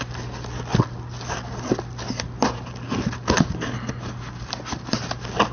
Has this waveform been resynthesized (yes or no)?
no